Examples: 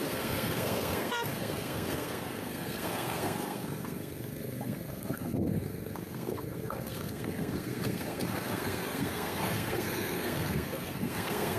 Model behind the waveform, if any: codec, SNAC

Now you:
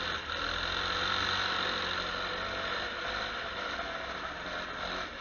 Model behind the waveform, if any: none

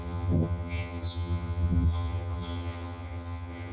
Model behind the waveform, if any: vocoder, HiFi-GAN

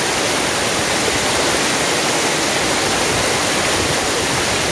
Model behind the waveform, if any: none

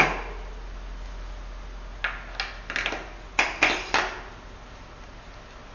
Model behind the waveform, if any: none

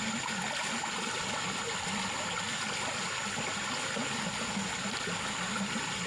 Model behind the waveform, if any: none